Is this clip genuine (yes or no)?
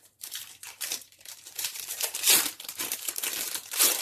no